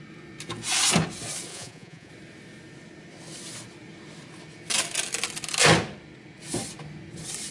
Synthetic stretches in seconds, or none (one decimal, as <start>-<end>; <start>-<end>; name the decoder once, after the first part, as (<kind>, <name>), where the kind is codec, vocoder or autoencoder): 1.5-2.1 (vocoder, Vocos)